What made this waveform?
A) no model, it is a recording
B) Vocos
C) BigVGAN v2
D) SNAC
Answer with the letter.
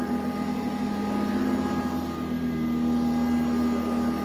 A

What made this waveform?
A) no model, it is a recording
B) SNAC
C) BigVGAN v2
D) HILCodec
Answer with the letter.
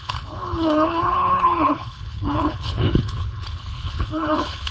D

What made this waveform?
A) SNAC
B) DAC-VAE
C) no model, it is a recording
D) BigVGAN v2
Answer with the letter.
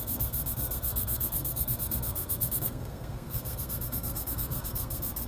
A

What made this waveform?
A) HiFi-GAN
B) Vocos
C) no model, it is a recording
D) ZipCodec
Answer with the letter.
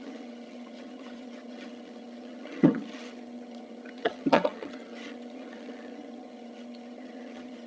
A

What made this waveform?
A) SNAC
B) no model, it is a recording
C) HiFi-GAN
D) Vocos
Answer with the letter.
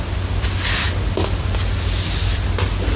B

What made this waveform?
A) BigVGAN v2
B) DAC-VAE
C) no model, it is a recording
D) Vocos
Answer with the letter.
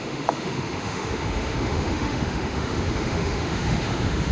B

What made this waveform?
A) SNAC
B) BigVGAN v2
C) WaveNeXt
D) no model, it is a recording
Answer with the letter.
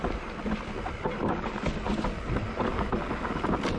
D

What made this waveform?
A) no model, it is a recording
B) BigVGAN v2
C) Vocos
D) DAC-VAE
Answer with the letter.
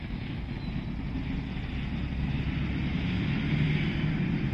A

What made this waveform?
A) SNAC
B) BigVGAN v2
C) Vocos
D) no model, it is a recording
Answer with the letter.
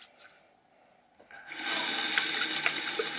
D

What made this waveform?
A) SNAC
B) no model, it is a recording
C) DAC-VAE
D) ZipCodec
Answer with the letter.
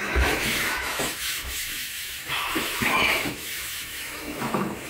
C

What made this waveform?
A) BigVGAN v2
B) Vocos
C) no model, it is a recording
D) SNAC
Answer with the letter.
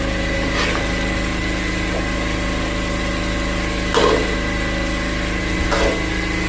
C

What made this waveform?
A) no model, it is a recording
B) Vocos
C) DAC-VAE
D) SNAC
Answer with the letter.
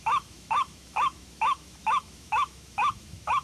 C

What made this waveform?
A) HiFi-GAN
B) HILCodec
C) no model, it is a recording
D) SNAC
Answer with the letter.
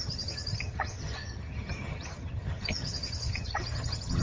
A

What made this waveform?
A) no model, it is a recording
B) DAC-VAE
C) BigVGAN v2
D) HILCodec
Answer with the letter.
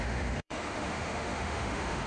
B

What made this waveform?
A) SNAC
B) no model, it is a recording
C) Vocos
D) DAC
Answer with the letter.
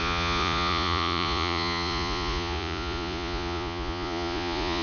C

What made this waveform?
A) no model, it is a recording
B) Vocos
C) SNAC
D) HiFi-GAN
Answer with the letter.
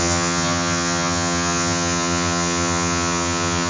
D